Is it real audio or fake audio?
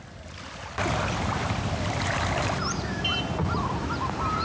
real